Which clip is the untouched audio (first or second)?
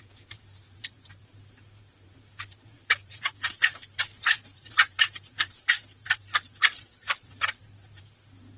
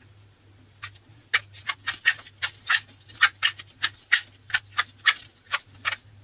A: second